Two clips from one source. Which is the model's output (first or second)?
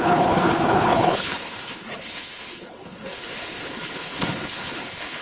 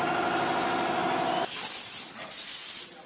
first